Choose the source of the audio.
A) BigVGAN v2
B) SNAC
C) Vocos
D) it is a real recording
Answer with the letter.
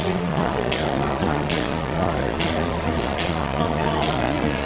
C